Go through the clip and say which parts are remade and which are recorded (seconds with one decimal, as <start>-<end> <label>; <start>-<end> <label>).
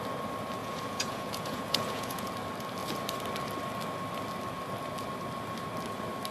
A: 0.0-0.6 recorded; 0.6-2.3 remade; 2.3-6.3 recorded